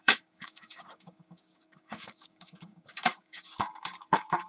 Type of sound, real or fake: fake